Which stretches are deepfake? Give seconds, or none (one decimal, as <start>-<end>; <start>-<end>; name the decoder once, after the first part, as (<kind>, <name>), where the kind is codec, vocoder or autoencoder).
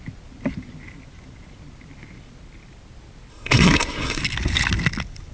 3.3-4.2 (codec, SNAC)